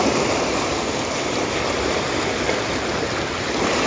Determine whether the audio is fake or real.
real